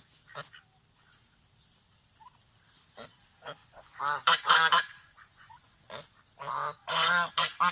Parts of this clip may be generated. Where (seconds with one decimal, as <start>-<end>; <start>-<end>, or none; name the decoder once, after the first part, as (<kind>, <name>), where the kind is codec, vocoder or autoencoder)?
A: 3.6-5.9 (vocoder, Vocos); 6.8-7.3